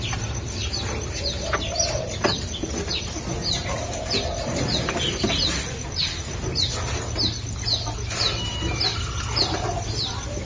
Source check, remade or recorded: recorded